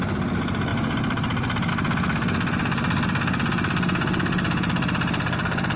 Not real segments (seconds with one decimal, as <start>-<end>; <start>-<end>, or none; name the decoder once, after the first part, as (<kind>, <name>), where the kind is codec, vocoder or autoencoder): none